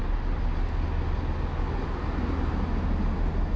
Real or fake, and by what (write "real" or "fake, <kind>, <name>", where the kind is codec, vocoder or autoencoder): real